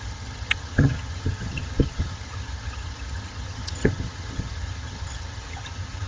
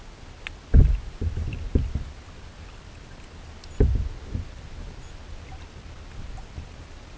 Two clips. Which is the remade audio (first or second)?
first